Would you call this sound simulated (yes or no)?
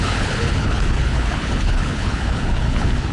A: yes